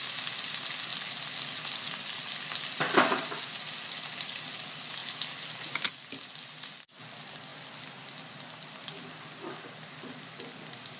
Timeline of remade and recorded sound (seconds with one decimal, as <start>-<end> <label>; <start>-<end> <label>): 0.0-11.0 recorded